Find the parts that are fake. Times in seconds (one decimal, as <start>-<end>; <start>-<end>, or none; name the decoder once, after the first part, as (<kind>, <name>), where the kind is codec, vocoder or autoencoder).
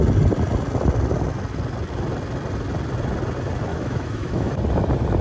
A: 3.7-4.6 (autoencoder, DAC-VAE)